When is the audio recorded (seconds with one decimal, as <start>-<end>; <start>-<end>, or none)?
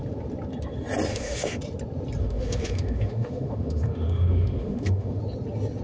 0.0-1.1; 1.6-2.2; 5.2-5.8